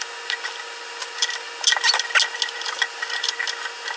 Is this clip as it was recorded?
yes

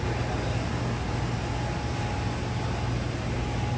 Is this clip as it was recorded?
yes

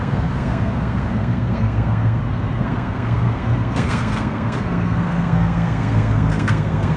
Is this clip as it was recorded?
no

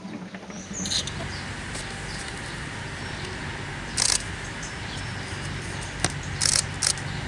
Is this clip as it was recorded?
yes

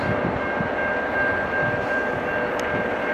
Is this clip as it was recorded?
yes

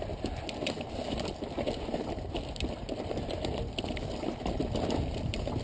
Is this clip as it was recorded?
yes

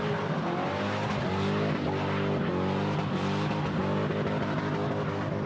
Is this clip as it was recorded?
yes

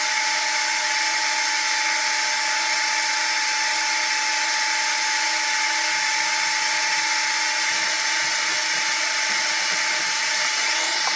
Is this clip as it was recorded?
yes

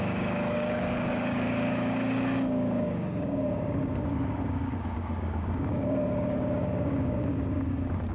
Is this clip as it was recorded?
no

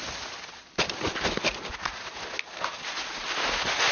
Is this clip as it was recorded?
yes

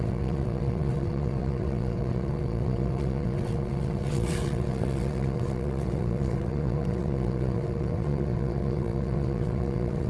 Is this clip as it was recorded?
no